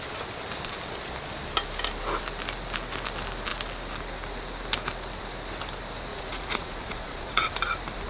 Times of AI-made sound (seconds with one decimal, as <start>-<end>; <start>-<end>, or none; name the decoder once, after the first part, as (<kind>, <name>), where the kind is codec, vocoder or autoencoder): 6.1-7.5 (vocoder, Vocos)

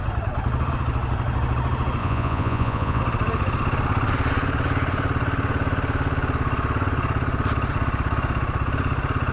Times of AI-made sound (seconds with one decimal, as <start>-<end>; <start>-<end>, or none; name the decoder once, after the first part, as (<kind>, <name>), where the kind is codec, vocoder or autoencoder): 2.0-3.0 (vocoder, Vocos)